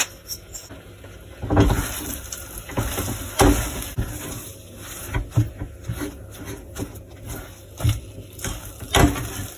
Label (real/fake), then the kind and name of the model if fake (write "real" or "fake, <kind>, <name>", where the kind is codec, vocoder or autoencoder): real